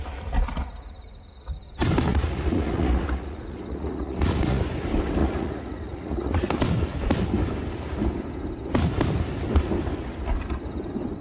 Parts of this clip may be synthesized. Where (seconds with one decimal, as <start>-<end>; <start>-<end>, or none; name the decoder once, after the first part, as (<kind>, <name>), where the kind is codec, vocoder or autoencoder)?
2.1-4.6 (vocoder, Vocos); 5.2-6.5

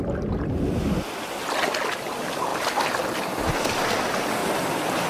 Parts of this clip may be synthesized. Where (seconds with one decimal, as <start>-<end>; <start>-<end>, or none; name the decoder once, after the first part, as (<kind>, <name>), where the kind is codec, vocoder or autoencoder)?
none

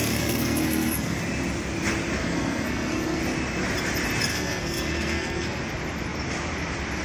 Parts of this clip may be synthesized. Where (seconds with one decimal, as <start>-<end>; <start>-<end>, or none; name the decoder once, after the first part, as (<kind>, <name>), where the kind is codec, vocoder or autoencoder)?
0.0-1.2 (codec, SNAC); 2.2-3.2; 4.3-5.6

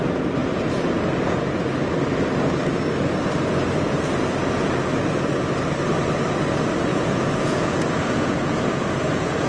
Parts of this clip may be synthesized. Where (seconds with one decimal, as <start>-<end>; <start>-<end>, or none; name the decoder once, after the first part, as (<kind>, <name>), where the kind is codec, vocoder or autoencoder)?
6.9-9.5 (vocoder, Vocos)

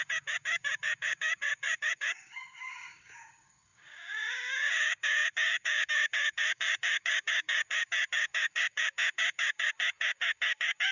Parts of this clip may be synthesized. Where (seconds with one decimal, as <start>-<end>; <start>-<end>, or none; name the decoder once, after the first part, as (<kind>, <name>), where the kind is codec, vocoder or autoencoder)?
0.0-10.9 (codec, DAC)